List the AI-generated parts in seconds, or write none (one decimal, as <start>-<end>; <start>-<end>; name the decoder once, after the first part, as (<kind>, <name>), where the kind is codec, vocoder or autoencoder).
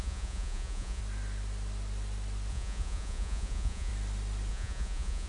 0.0-1.0 (vocoder, Vocos); 2.5-3.9; 4.5-5.3